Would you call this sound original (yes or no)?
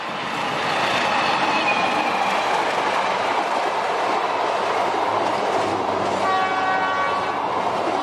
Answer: yes